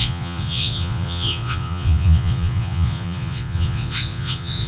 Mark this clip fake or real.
fake